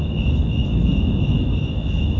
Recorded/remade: remade